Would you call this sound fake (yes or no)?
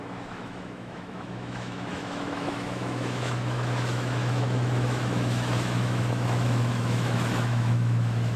yes